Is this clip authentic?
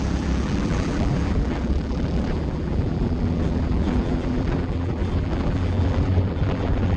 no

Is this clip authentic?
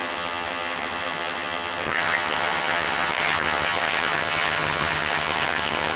no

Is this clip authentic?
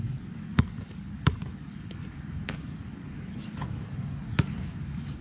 no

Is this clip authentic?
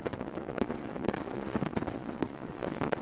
no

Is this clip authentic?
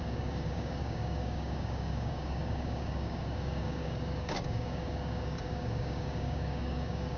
no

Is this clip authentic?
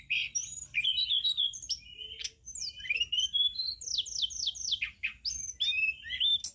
yes